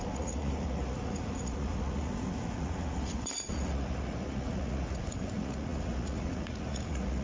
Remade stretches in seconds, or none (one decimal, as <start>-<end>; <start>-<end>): 0.0-7.2